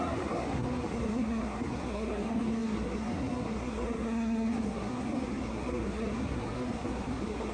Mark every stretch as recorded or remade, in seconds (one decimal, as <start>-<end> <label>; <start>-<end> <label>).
0.0-7.5 remade